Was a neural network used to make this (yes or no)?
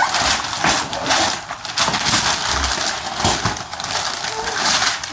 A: no